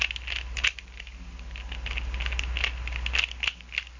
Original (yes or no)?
yes